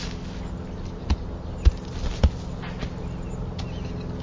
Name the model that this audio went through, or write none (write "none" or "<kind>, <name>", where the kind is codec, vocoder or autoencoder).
none